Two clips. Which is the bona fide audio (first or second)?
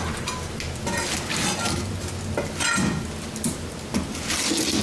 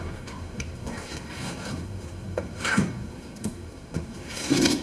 first